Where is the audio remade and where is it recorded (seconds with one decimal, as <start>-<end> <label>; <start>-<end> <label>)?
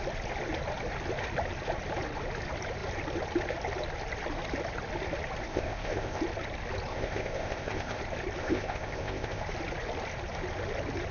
0.0-5.5 recorded; 5.5-6.2 remade; 6.2-6.9 recorded; 6.9-8.0 remade; 8.0-8.4 recorded; 8.4-9.4 remade; 9.4-11.1 recorded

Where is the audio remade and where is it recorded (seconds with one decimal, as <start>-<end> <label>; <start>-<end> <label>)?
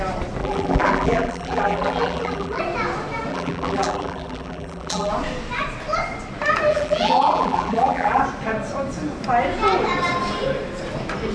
0.0-0.4 recorded; 0.4-2.6 remade; 2.6-3.3 recorded; 3.3-5.1 remade; 5.1-6.7 recorded; 6.7-8.2 remade; 8.2-11.3 recorded